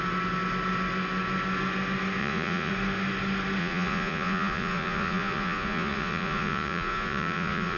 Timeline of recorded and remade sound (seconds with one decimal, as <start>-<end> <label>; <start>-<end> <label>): 0.0-2.2 recorded; 2.2-2.7 remade; 2.7-3.6 recorded; 3.6-7.8 remade